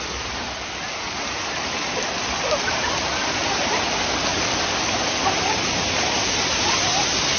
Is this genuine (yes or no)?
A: yes